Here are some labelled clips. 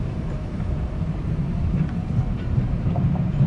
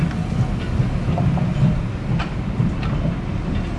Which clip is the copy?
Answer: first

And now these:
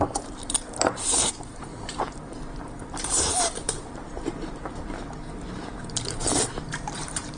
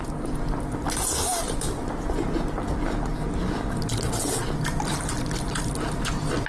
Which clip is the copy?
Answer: first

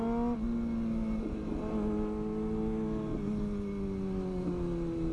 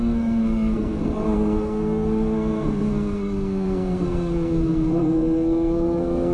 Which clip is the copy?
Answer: second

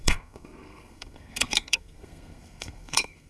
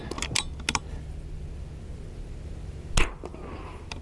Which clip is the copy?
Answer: first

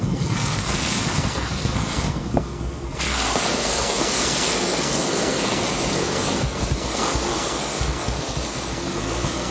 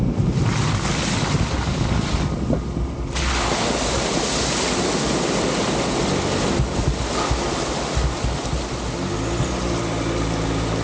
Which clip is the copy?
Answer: first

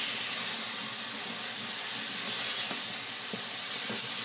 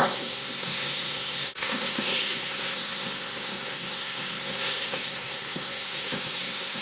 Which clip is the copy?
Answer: second